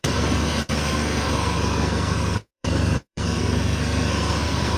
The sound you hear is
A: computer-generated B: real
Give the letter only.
A